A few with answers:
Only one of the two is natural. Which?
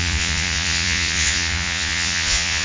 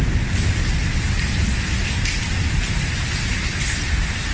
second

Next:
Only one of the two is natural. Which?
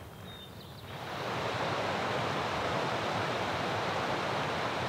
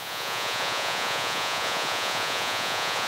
first